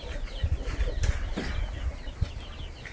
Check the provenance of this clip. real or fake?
real